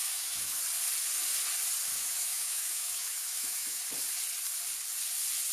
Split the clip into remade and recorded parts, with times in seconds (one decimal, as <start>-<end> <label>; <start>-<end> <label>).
0.0-0.6 remade; 0.6-1.9 recorded; 1.9-3.8 remade; 3.8-5.5 recorded